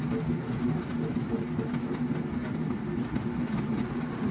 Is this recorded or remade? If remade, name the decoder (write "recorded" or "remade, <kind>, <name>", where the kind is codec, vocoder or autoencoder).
recorded